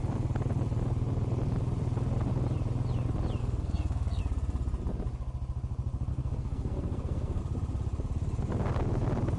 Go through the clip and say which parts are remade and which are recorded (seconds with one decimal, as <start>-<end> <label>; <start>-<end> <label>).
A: 0.0-3.4 recorded; 3.4-4.2 remade; 4.2-6.1 recorded; 6.1-7.4 remade; 7.4-9.4 recorded